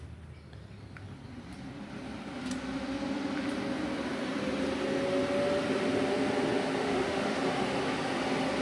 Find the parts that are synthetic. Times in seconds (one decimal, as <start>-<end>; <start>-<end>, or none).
6.8-7.4